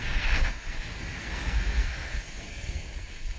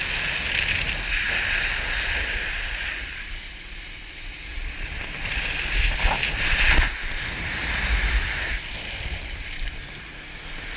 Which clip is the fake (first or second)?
first